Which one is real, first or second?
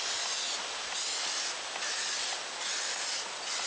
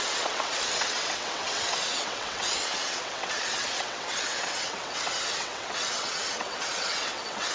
first